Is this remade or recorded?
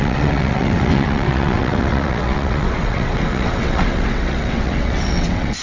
remade